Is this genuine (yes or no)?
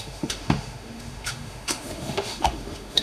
no